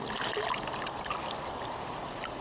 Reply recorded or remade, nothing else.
recorded